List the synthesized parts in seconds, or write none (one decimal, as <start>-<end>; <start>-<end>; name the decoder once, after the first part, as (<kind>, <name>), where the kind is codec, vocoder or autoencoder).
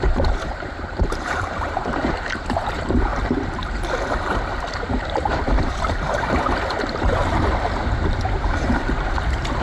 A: 0.0-3.1 (vocoder, BigVGAN v2); 4.9-7.2; 8.2-9.6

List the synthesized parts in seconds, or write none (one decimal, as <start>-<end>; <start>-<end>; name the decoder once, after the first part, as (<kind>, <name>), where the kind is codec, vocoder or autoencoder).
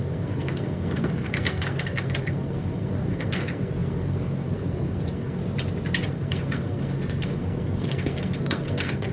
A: 0.0-5.4 (codec, SNAC); 6.1-9.1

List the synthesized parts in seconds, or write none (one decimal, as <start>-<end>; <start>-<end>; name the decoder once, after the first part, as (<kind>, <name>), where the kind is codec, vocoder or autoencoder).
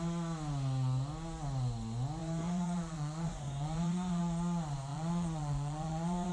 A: 2.2-4.2 (vocoder, Vocos); 4.9-6.3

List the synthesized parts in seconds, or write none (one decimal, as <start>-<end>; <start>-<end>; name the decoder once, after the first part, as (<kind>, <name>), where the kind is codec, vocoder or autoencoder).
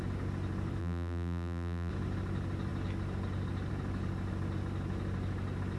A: 0.8-1.9 (vocoder, BigVGAN v2)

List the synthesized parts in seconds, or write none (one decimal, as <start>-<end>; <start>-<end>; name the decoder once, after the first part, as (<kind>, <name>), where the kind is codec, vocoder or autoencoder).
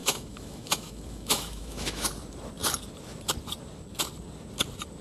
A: 0.0-2.1 (autoencoder, DAC-VAE)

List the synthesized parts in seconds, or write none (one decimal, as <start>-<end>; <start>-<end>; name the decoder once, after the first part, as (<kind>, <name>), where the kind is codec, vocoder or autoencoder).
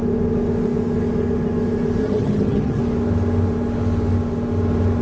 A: 2.0-2.8 (vocoder, HiFi-GAN)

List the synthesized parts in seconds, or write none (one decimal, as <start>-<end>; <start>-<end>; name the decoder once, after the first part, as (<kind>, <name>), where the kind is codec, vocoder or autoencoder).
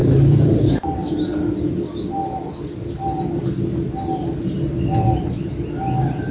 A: 0.0-1.3 (vocoder, BigVGAN v2)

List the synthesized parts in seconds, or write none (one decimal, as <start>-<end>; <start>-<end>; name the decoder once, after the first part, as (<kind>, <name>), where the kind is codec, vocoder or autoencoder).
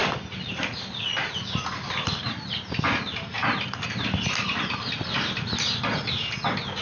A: none